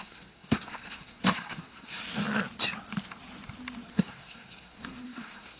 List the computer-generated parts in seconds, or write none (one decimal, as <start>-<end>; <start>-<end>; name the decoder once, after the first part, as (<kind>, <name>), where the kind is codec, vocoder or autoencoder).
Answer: 0.0-2.0 (codec, SNAC); 3.9-5.6